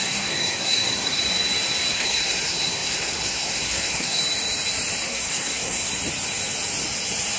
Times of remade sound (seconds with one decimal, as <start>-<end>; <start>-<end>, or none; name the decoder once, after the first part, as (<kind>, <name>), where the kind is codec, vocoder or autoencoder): 0.0-1.2 (codec, SNAC); 1.9-4.2; 5.0-5.9